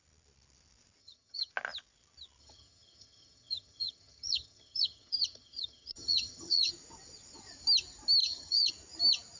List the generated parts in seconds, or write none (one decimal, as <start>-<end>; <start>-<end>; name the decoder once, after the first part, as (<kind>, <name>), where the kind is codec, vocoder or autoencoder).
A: 1.0-1.5 (vocoder, HiFi-GAN); 2.4-6.7; 8.2-8.7